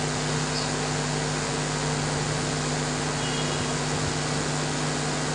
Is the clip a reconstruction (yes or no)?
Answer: no